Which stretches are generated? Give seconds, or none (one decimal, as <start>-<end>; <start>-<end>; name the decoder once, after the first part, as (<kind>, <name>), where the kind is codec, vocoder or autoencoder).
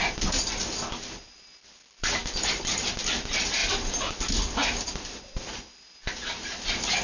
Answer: none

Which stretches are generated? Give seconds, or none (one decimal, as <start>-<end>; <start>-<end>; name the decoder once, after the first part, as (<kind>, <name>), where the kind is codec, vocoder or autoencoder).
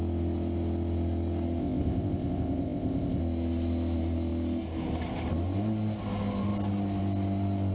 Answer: 1.6-3.2 (codec, ZipCodec)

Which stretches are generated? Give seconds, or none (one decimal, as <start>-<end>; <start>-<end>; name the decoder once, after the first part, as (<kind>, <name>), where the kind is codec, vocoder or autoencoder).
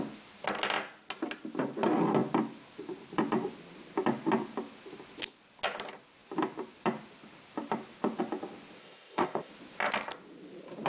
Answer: 8.8-9.5 (codec, ZipCodec)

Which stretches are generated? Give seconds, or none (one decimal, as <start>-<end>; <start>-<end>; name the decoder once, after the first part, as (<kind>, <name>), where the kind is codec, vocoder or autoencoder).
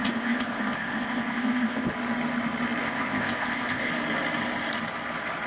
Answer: 0.0-1.9 (codec, ZipCodec); 2.8-3.9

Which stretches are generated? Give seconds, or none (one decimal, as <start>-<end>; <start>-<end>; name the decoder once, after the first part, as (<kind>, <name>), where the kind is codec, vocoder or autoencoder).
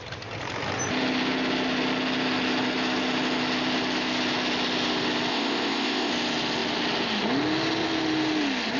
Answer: 5.3-6.1 (codec, ZipCodec)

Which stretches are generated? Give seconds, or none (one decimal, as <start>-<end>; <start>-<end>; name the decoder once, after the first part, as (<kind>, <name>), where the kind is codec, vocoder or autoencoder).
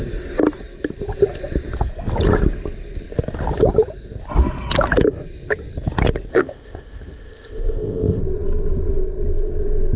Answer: 6.3-8.2 (codec, ZipCodec)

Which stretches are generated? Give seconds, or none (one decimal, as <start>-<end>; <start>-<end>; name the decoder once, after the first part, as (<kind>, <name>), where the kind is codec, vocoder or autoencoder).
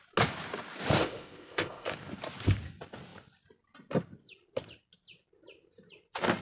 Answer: 1.0-1.9 (codec, ZipCodec)